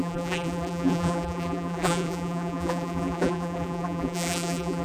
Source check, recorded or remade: remade